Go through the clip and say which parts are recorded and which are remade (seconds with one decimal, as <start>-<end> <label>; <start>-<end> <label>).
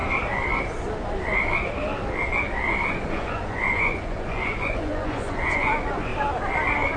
0.0-2.9 recorded; 2.9-6.1 remade; 6.1-7.0 recorded